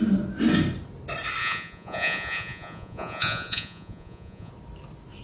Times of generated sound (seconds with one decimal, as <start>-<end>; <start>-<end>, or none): 1.4-4.5